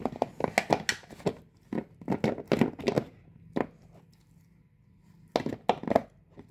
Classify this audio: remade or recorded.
recorded